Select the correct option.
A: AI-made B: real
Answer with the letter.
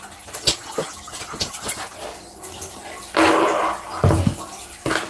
B